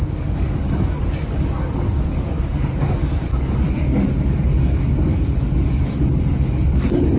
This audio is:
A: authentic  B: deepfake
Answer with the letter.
B